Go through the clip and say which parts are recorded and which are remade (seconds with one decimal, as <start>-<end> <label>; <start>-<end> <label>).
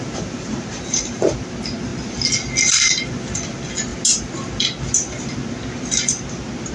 0.0-0.4 recorded; 0.4-1.3 remade; 1.3-6.7 recorded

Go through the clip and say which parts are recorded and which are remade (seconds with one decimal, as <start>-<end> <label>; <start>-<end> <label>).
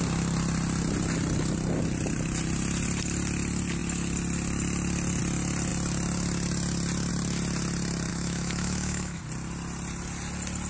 0.0-8.1 recorded; 8.1-9.2 remade; 9.2-10.7 recorded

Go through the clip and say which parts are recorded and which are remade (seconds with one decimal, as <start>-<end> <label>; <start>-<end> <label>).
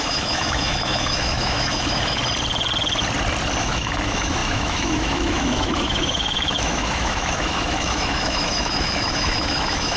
0.0-2.2 remade; 2.2-3.6 recorded; 3.6-10.0 remade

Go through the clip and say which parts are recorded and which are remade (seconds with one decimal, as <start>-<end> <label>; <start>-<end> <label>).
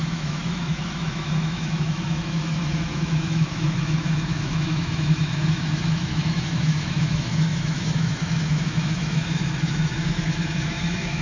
0.0-11.2 remade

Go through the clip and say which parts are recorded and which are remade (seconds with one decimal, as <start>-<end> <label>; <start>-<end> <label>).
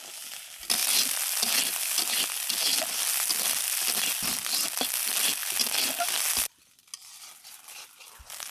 0.0-8.5 recorded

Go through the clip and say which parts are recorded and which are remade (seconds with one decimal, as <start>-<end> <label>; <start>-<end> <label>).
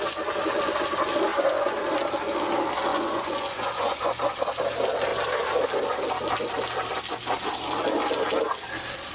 0.0-1.3 recorded; 1.3-1.8 remade; 1.8-2.9 recorded; 2.9-4.1 remade; 4.1-9.1 recorded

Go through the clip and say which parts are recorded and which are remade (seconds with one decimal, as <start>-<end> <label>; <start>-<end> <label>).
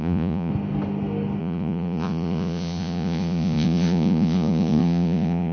0.0-0.5 remade; 0.5-1.4 recorded; 1.4-5.5 remade